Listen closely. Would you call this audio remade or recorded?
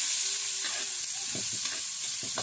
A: recorded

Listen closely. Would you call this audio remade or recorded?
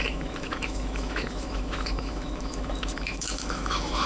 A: remade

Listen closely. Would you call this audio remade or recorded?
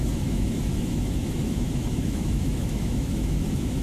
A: remade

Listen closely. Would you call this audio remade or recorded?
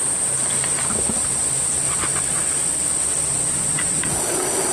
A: recorded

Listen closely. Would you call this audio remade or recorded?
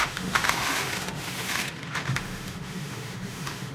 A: remade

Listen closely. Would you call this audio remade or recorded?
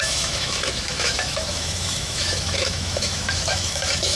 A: remade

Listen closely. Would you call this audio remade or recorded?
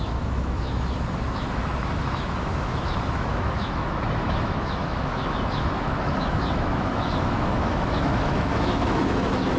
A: remade